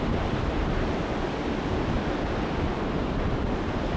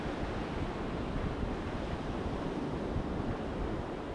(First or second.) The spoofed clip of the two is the second